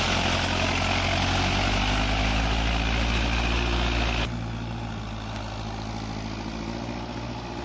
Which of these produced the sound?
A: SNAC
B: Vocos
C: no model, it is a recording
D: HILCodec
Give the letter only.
C